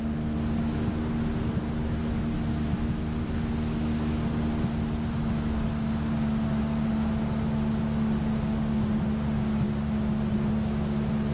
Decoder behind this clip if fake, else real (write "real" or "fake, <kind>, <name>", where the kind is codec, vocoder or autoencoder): real